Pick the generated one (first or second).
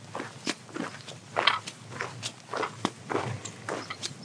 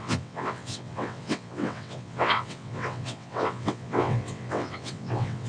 second